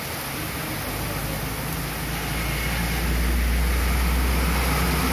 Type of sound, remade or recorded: recorded